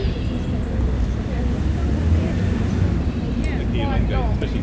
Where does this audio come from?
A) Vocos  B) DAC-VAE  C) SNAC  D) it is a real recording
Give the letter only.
D